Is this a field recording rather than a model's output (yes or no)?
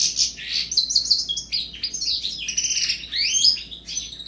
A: yes